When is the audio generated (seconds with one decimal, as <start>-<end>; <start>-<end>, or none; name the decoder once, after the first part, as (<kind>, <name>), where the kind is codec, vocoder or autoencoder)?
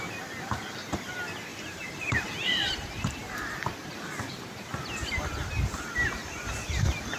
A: 1.5-3.5 (vocoder, BigVGAN v2)